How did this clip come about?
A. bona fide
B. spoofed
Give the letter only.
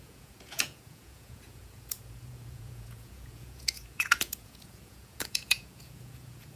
B